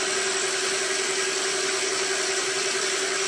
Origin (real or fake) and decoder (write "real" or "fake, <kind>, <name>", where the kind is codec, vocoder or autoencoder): real